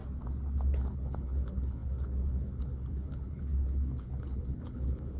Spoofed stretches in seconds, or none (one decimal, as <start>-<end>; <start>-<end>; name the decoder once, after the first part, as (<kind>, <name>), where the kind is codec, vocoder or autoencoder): 0.7-5.2 (codec, HILCodec)